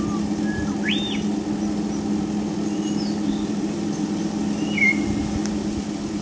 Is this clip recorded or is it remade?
recorded